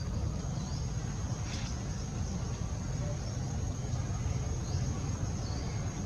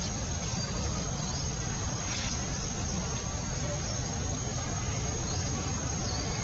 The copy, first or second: second